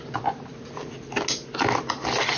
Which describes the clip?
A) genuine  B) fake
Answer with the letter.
A